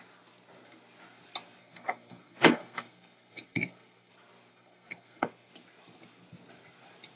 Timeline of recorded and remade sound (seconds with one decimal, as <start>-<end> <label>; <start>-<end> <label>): 0.0-1.6 recorded; 1.6-4.1 remade; 4.1-4.5 recorded; 4.5-5.5 remade; 5.5-7.2 recorded